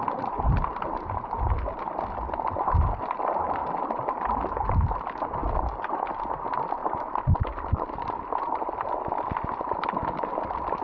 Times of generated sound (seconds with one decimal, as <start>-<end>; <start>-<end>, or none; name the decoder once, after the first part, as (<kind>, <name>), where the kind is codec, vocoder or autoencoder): 3.6-4.3 (vocoder, BigVGAN v2); 5.4-6.1; 6.8-8.6